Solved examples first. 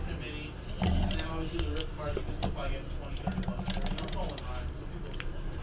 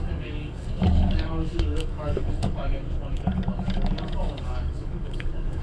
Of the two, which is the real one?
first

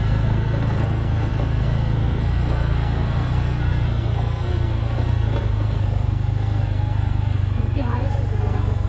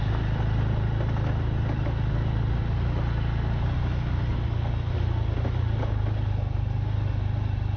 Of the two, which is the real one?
second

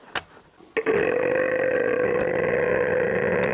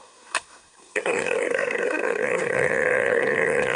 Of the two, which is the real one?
first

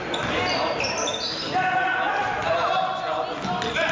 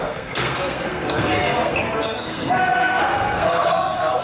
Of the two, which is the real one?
first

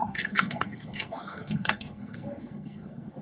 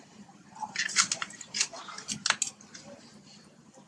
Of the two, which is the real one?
second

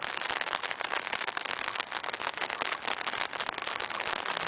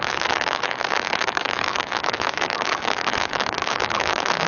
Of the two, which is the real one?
first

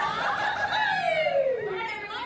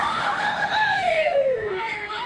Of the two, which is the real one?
first